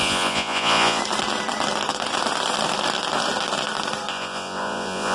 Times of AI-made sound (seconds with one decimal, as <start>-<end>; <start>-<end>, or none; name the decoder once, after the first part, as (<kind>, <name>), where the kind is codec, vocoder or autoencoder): 0.0-1.0 (vocoder, Vocos); 4.1-5.1